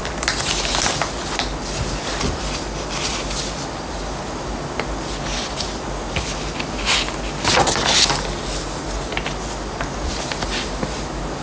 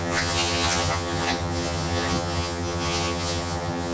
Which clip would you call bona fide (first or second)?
first